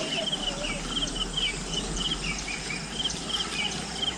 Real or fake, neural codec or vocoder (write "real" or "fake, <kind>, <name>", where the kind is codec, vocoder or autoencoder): real